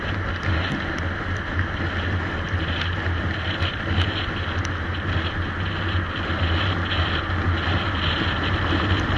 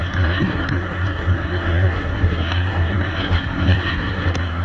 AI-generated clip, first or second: second